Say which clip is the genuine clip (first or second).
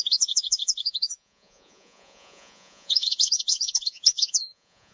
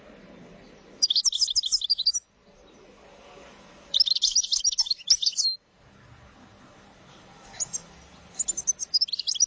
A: second